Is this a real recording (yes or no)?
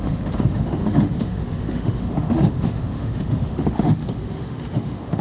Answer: no